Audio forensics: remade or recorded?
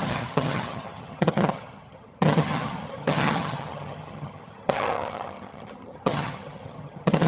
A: remade